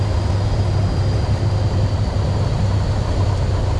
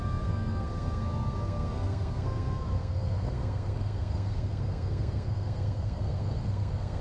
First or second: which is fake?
second